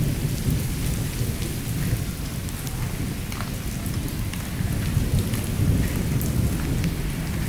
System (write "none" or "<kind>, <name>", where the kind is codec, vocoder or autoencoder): none